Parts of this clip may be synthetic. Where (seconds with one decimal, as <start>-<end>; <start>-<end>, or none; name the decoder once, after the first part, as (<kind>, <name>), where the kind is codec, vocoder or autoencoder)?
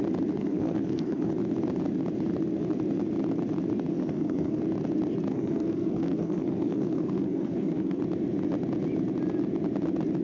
0.4-1.3 (codec, SNAC); 3.9-4.6; 5.3-8.0